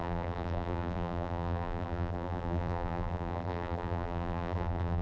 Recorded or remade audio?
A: remade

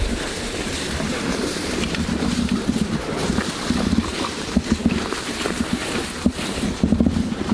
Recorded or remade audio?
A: remade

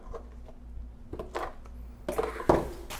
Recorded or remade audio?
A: recorded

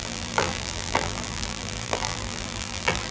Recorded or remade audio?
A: remade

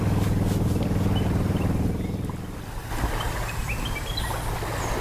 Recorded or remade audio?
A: recorded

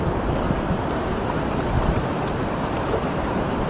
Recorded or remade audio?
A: remade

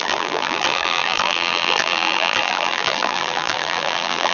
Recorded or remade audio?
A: remade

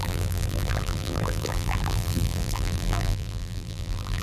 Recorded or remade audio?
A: remade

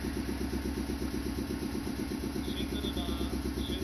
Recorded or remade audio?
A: recorded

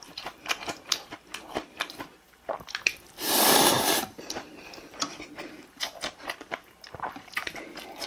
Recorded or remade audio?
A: remade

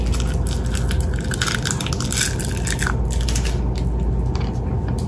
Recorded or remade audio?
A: recorded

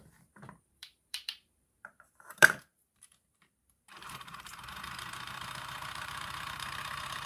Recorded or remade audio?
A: remade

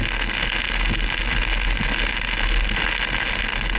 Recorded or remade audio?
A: recorded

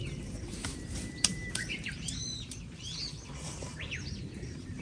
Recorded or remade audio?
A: remade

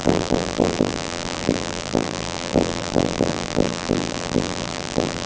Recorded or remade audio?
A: remade